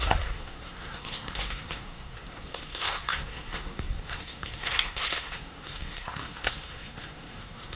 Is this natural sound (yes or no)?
no